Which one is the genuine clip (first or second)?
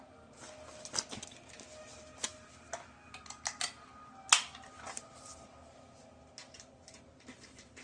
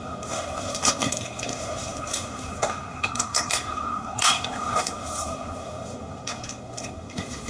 first